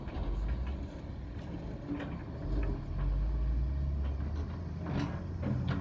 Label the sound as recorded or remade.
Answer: recorded